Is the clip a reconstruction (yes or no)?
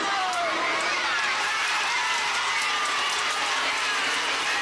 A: no